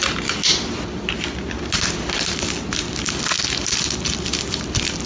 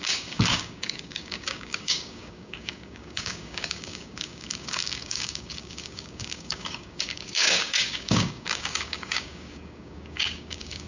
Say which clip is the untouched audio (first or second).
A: first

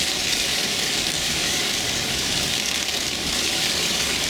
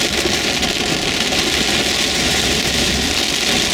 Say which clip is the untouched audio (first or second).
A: second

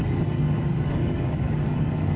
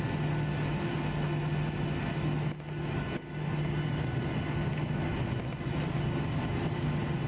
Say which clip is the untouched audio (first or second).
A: second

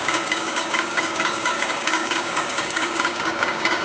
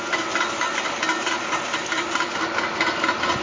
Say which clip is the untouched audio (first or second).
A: second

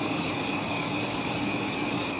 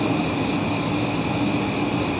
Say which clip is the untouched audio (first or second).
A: second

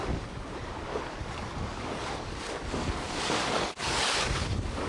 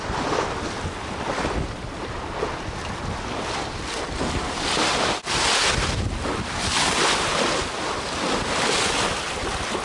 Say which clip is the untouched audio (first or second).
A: second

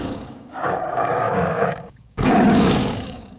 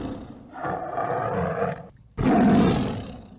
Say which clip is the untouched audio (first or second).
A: second